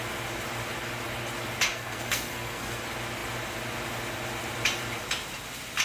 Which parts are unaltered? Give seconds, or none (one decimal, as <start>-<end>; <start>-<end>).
0.0-1.7; 2.8-5.8